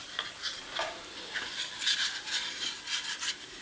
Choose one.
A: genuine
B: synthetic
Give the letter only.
A